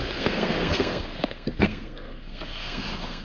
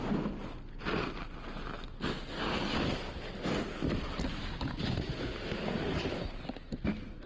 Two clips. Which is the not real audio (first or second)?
first